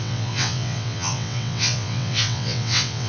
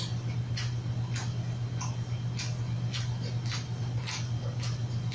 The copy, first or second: first